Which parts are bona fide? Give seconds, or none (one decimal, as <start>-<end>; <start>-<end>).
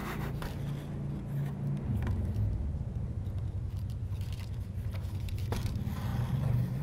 0.6-6.8